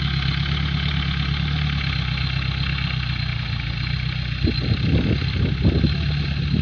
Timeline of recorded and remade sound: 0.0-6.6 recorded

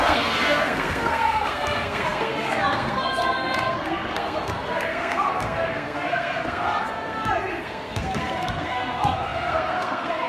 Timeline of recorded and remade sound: 0.0-10.3 remade

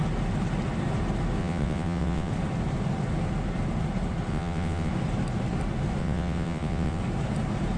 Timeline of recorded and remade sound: 0.0-1.4 recorded; 1.4-2.3 remade; 2.3-4.3 recorded; 4.3-4.9 remade; 4.9-6.0 recorded; 6.0-7.0 remade; 7.0-7.8 recorded

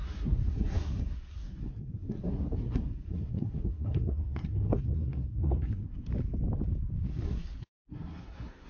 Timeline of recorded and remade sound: 0.0-6.1 remade; 6.1-7.1 recorded; 7.1-8.7 remade